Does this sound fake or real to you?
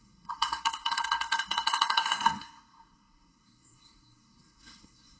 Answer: fake